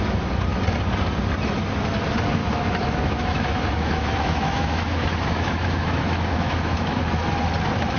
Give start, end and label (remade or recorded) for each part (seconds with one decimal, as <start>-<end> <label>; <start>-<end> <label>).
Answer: 0.0-2.4 recorded; 2.4-7.2 remade; 7.2-8.0 recorded